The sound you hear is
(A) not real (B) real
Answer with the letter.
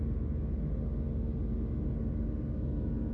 B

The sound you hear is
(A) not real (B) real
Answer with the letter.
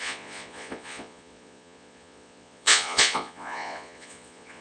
A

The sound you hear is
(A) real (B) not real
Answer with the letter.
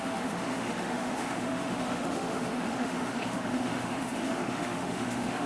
B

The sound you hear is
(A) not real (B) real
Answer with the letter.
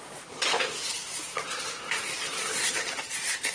A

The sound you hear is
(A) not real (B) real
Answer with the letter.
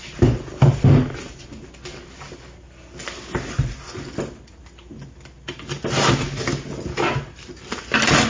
B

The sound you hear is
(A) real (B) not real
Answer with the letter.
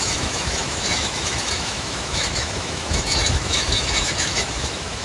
B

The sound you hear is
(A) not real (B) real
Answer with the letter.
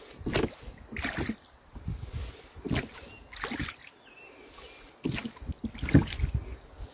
B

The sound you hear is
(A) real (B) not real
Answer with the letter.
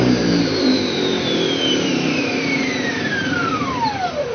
B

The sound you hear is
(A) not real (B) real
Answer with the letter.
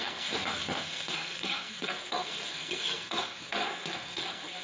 A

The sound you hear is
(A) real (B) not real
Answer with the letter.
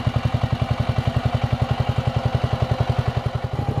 A